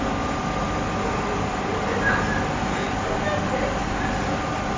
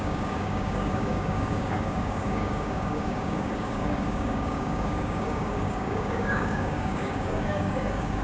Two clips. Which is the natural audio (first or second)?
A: first